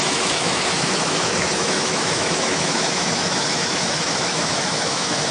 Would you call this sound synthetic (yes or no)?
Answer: yes